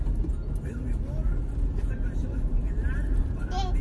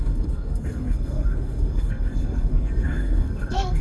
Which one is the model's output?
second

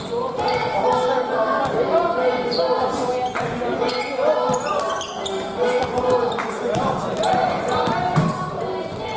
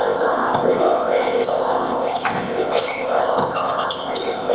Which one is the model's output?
second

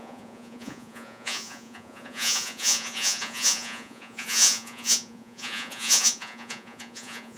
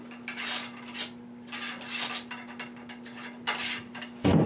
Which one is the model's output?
first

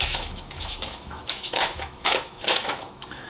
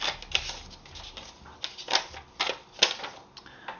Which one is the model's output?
first